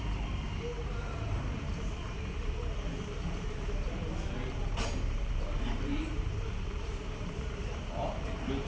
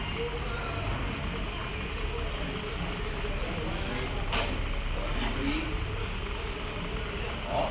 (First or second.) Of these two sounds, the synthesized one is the first